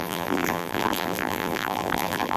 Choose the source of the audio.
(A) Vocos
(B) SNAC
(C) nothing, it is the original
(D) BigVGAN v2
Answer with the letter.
D